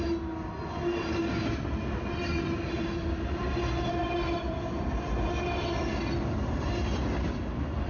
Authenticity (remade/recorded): recorded